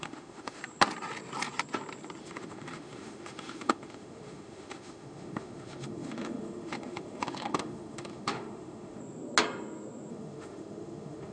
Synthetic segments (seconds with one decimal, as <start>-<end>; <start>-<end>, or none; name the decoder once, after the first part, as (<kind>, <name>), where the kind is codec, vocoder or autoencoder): 0.0-0.6 (autoencoder, DAC-VAE); 2.2-9.0; 10.1-11.3